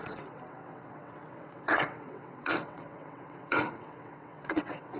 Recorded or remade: remade